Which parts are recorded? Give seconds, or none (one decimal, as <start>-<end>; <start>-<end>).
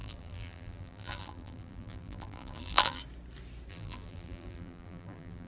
3.0-3.7